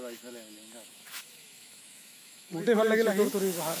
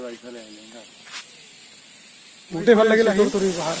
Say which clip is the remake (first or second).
first